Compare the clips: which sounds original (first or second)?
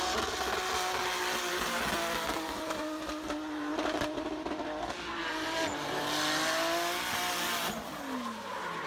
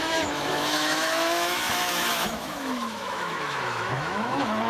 first